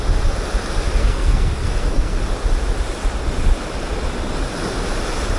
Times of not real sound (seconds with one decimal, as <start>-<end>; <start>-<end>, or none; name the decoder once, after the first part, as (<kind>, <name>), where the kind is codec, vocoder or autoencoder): 1.0-2.2 (codec, SNAC)